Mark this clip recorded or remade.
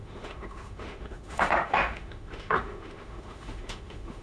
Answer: remade